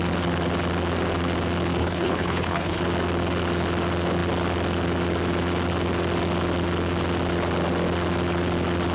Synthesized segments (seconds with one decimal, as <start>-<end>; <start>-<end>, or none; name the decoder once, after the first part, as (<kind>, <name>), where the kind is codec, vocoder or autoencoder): 1.8-2.8 (codec, HILCodec)